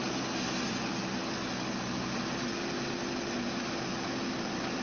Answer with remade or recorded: recorded